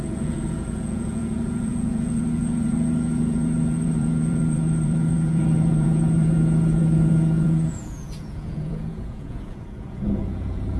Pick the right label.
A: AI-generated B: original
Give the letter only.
A